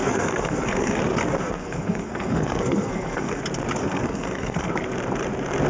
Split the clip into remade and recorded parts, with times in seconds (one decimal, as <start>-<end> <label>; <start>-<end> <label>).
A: 0.0-1.0 remade; 1.0-1.6 recorded; 1.6-3.4 remade; 3.4-3.8 recorded; 3.8-4.7 remade; 4.7-5.7 recorded